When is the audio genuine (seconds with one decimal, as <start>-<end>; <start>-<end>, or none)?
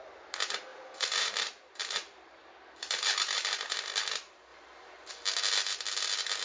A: 0.0-0.7; 4.0-6.4